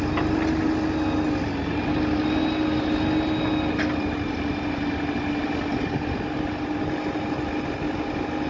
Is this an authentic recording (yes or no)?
yes